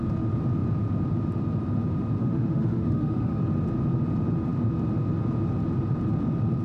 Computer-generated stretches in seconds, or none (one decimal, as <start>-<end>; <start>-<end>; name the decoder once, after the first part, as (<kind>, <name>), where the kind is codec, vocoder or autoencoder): 2.2-3.4 (autoencoder, DAC-VAE)